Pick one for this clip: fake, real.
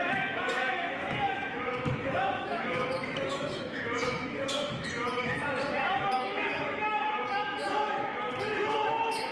fake